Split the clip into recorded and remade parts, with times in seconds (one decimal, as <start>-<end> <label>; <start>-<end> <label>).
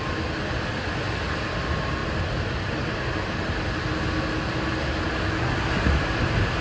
0.0-6.6 recorded